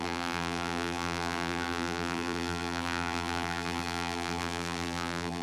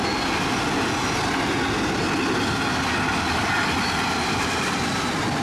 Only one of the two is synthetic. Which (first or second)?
first